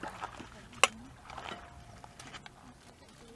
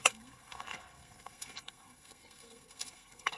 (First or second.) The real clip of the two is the first